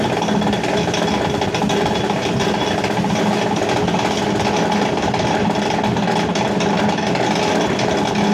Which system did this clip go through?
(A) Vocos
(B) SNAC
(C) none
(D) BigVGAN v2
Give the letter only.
C